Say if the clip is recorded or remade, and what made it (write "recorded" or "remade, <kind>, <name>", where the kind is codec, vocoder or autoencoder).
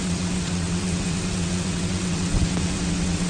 remade, vocoder, WaveNeXt